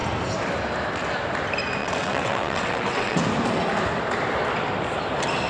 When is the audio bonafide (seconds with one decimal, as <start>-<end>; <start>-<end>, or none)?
0.0-1.8; 3.2-5.5